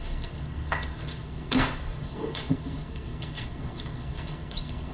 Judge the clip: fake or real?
fake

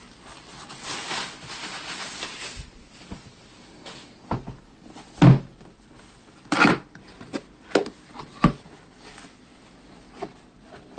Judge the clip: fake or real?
real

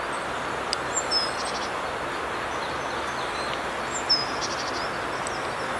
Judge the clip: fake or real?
real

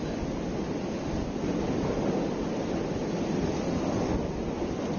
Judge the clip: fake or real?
real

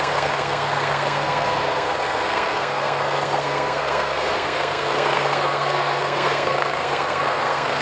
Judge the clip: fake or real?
fake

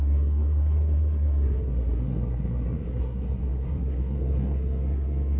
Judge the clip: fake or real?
fake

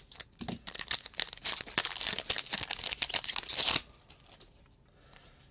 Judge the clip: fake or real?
real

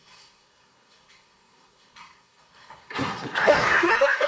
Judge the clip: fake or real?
fake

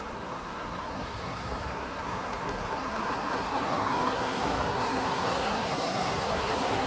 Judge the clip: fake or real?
fake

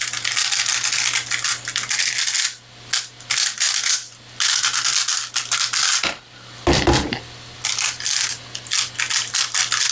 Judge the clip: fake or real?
real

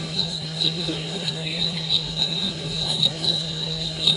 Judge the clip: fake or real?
fake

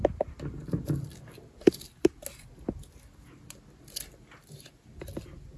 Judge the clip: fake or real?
real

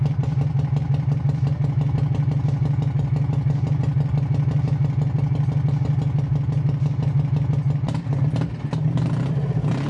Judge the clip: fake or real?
real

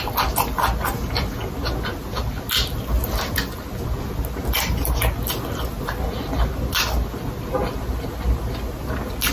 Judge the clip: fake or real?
real